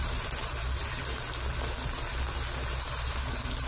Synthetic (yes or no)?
no